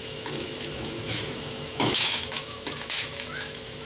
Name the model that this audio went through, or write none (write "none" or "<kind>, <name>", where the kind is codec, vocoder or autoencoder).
autoencoder, DAC-VAE